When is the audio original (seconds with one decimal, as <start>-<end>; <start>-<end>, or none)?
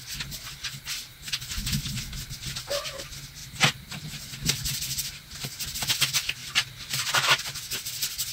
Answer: 0.0-3.4; 5.3-6.4; 7.1-8.3